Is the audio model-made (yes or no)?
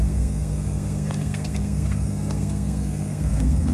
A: yes